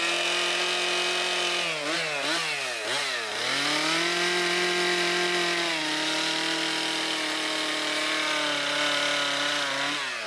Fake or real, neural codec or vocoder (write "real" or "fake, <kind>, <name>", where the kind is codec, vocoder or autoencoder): real